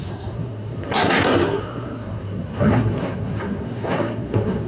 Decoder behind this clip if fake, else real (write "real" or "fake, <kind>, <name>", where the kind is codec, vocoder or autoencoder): fake, codec, SNAC